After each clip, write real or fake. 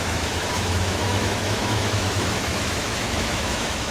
fake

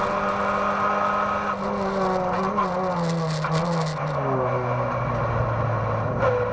real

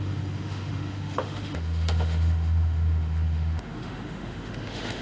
fake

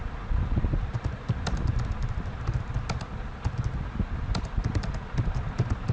real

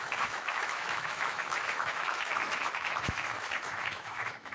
fake